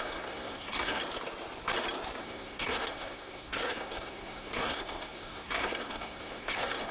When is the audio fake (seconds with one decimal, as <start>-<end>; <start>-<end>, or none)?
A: 0.0-1.0; 2.2-6.9